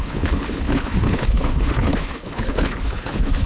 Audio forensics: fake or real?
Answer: fake